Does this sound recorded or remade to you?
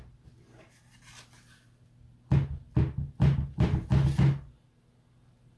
recorded